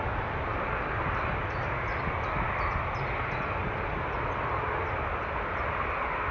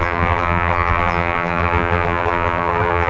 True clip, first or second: first